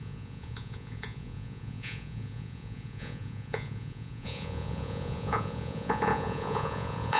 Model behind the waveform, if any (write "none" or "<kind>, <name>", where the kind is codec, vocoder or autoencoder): vocoder, Vocos